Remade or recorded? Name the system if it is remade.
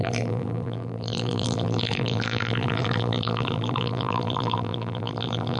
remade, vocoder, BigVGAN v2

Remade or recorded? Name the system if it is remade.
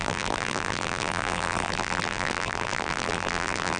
remade, vocoder, BigVGAN v2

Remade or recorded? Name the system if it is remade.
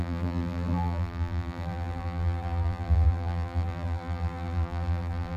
remade, vocoder, BigVGAN v2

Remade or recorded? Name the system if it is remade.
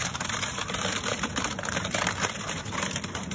remade, vocoder, BigVGAN v2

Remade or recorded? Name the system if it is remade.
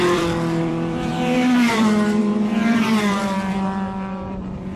remade, vocoder, BigVGAN v2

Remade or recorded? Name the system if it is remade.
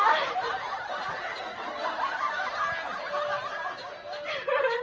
remade, vocoder, BigVGAN v2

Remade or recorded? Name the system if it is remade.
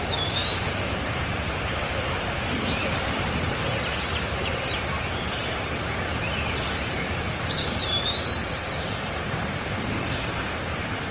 remade, vocoder, BigVGAN v2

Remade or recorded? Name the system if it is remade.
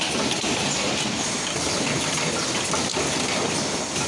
recorded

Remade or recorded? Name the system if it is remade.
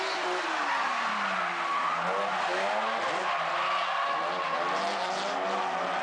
recorded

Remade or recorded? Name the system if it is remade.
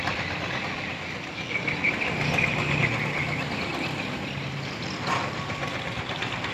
recorded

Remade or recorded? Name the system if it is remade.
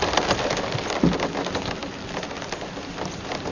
recorded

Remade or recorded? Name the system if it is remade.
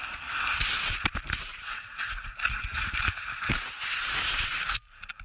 recorded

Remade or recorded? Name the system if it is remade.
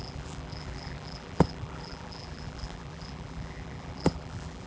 remade, vocoder, BigVGAN v2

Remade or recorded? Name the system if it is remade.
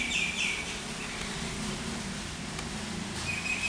remade, vocoder, BigVGAN v2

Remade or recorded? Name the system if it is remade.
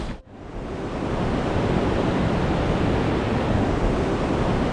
recorded